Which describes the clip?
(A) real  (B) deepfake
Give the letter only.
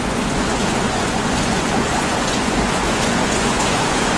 B